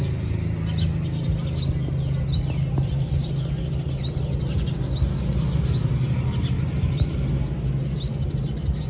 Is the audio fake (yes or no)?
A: no